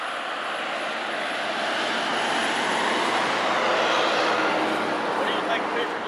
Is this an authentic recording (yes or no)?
yes